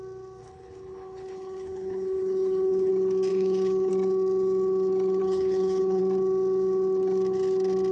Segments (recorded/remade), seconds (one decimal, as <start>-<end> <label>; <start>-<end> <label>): 0.0-0.4 recorded; 0.4-2.9 remade; 2.9-3.3 recorded; 3.3-3.9 remade; 3.9-5.2 recorded; 5.2-6.0 remade; 6.0-7.9 recorded